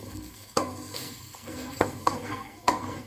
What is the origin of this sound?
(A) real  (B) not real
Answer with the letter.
B